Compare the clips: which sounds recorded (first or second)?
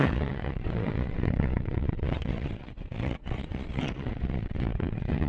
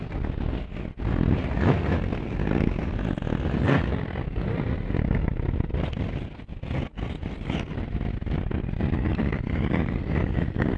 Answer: second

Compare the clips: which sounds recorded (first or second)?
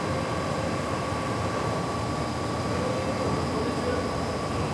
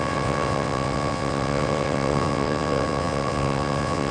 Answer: first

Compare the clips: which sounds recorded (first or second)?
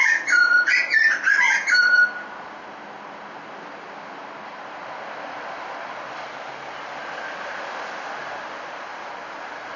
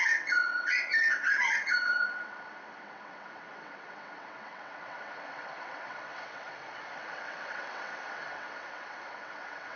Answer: first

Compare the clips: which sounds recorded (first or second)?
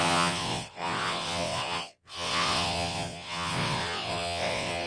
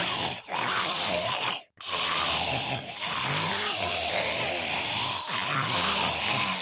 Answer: second